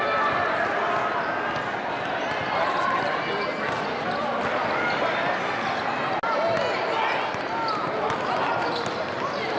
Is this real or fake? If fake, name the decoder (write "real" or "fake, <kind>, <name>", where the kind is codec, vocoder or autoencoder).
real